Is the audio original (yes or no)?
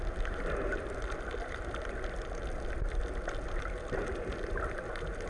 yes